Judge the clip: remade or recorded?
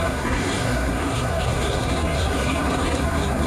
remade